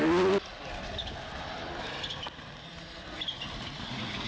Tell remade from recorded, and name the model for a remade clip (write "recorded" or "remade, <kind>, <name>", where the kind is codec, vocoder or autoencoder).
recorded